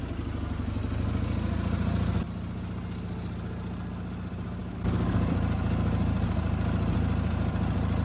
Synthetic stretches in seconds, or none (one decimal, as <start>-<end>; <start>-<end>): 4.6-5.3